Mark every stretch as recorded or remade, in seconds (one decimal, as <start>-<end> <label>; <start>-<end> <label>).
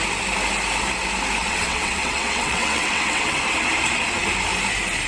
0.0-1.4 recorded; 1.4-3.4 remade; 3.4-5.1 recorded